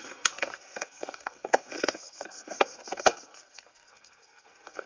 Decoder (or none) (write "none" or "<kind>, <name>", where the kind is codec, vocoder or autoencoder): codec, SNAC